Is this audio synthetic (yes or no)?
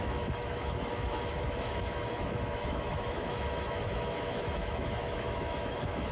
yes